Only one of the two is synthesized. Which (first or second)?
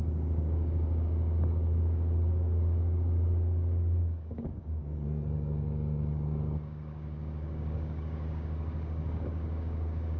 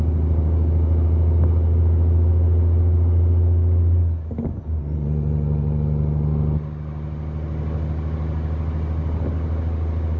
first